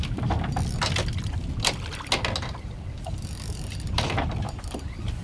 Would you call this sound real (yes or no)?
yes